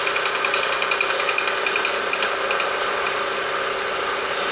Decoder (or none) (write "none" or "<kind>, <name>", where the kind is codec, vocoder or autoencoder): none